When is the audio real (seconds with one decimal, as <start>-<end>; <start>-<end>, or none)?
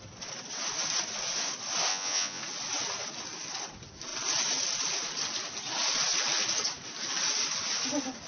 0.0-1.9; 2.4-8.3